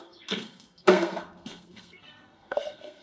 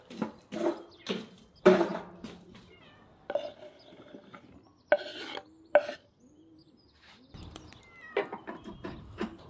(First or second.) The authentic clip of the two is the second